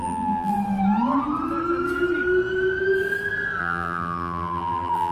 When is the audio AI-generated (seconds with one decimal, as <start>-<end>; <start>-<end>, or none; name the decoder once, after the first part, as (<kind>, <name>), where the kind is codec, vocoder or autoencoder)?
0.0-0.5 (vocoder, BigVGAN v2); 3.6-5.1